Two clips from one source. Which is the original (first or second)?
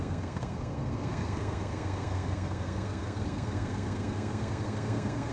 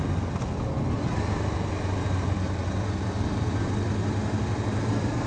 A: second